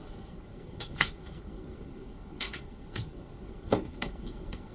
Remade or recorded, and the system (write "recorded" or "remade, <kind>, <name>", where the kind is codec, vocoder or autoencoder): remade, codec, SNAC